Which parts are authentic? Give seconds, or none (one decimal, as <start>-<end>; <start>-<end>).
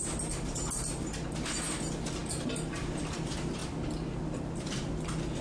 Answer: 0.0-5.4